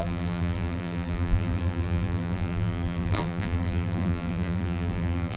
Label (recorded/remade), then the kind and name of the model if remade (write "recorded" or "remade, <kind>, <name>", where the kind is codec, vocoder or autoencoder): remade, vocoder, BigVGAN v2